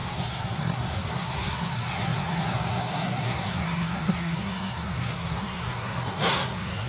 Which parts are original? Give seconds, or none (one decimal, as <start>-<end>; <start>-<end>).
none